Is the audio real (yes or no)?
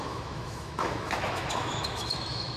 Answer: no